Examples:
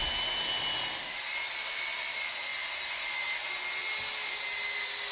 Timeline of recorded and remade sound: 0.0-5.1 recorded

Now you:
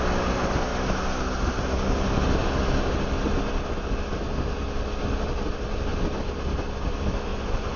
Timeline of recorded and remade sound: 0.0-7.3 recorded; 7.3-7.8 remade

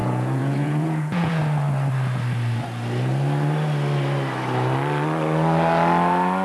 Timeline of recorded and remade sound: 0.0-1.4 remade; 1.4-6.4 recorded

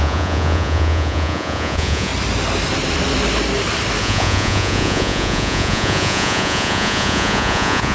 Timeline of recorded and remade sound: 0.0-2.1 remade; 2.1-4.0 recorded; 4.0-7.9 remade

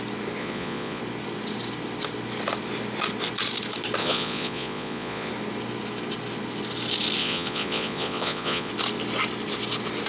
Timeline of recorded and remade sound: 0.0-0.4 recorded; 0.4-1.0 remade; 1.0-4.0 recorded; 4.0-5.3 remade; 5.3-7.2 recorded; 7.2-8.7 remade; 8.7-10.1 recorded

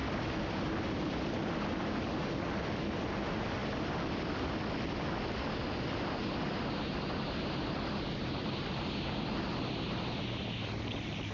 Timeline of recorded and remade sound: 0.0-11.3 recorded

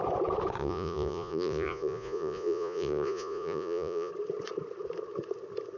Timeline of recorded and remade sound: 0.0-0.6 recorded; 0.6-4.1 remade; 4.1-5.8 recorded

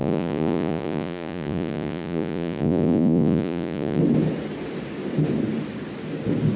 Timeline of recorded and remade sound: 0.0-4.0 remade; 4.0-6.6 recorded